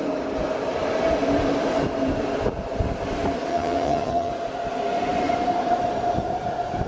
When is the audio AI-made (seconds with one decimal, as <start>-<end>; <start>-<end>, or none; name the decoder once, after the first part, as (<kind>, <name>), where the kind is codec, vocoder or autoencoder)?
3.5-4.3 (vocoder, HiFi-GAN)